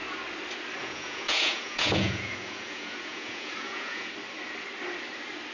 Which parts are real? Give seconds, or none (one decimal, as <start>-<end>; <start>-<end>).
0.0-0.8; 4.1-5.5